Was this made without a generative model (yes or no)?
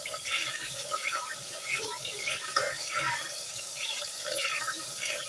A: no